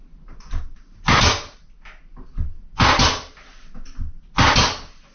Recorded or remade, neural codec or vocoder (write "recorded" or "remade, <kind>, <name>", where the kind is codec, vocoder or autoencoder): recorded